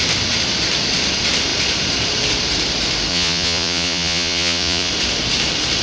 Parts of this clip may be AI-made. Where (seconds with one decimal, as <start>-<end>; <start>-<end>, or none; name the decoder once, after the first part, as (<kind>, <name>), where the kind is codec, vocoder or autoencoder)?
3.1-4.9 (vocoder, Vocos)